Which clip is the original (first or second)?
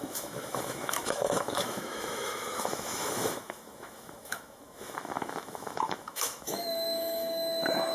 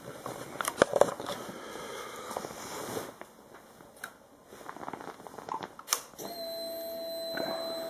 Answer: second